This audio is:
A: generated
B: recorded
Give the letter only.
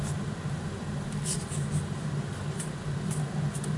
B